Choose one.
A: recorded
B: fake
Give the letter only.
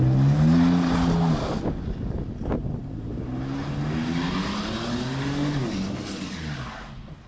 A